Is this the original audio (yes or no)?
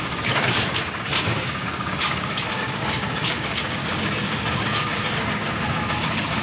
no